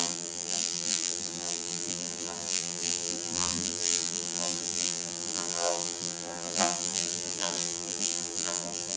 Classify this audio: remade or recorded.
remade